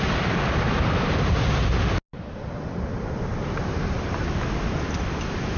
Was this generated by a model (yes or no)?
no